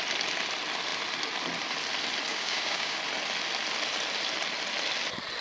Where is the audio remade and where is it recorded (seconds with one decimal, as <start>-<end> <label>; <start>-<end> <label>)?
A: 0.0-2.3 recorded; 2.3-3.0 remade; 3.0-5.4 recorded